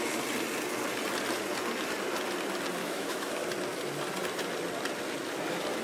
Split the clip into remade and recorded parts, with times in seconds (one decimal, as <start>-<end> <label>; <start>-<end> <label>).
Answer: 0.0-2.8 recorded; 2.8-3.3 remade; 3.3-5.8 recorded